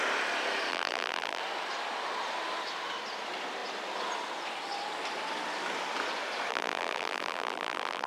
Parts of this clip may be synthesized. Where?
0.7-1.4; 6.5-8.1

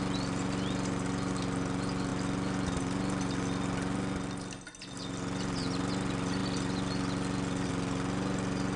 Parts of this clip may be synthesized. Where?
none

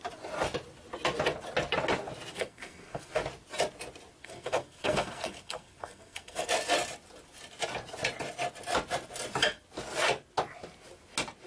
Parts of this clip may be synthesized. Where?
2.3-3.2; 4.2-6.5

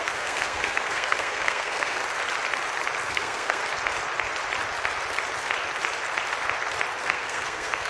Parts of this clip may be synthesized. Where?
0.0-2.0; 3.1-3.6; 7.0-7.9

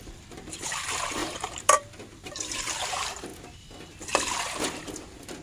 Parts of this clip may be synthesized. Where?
0.0-3.3; 4.1-5.4

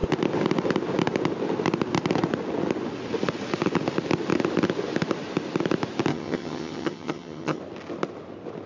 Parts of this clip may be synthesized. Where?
6.1-7.6